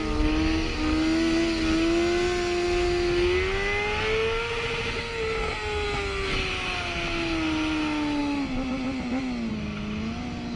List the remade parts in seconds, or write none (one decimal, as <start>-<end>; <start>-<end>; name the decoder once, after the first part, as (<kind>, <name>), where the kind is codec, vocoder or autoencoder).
none